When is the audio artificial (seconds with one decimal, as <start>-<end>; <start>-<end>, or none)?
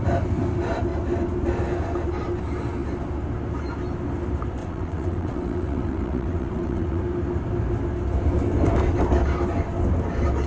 4.6-7.0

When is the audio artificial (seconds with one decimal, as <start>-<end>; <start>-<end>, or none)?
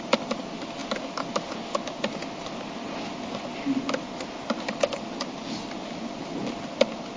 none